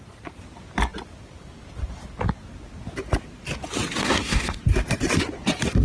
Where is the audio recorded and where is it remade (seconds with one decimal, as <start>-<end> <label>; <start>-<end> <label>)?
0.0-4.0 recorded; 4.0-4.6 remade; 4.6-5.8 recorded